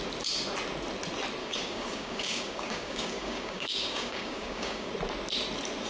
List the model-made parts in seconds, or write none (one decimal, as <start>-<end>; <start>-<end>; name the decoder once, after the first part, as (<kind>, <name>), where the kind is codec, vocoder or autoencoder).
1.4-4.9 (codec, DAC)